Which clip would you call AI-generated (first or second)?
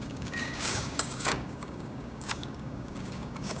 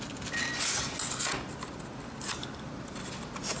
first